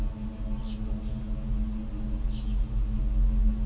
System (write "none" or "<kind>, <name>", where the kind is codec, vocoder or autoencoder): none